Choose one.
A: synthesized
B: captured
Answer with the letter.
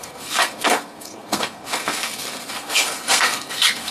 A